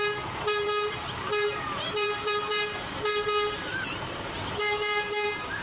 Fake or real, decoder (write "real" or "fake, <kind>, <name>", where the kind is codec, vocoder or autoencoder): fake, vocoder, BigVGAN v2